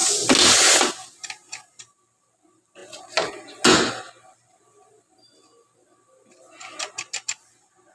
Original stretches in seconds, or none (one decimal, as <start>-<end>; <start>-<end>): 0.0-7.9